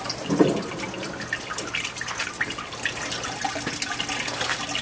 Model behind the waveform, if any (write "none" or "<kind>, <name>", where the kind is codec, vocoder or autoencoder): none